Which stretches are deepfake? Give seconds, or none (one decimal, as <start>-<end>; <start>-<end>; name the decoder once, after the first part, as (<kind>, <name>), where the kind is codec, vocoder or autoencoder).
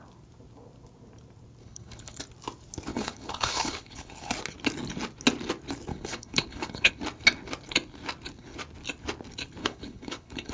1.6-2.2 (codec, HILCodec); 2.9-4.3; 5.9-6.9; 9.6-10.5